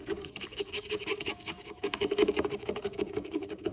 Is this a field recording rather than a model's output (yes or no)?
no